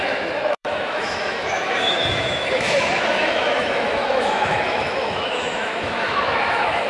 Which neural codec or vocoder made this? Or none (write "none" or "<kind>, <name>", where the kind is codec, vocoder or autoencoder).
autoencoder, DAC-VAE